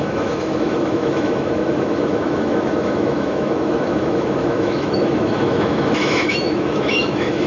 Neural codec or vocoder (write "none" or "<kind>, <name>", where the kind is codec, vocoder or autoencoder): autoencoder, DAC-VAE